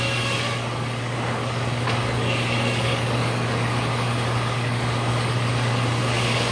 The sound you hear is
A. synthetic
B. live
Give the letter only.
A